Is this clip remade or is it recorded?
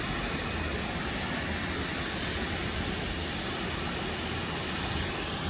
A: recorded